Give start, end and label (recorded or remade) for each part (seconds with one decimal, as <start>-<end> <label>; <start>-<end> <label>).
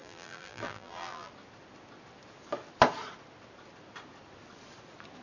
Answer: 0.0-1.3 remade; 1.3-5.2 recorded